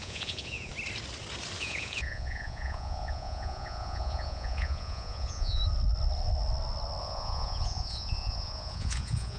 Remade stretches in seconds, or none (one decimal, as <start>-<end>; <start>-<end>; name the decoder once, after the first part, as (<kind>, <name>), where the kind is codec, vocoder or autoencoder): 0.0-0.7 (vocoder, Vocos); 1.6-5.6; 7.0-9.4